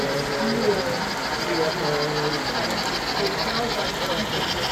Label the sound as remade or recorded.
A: recorded